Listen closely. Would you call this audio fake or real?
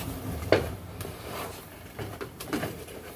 fake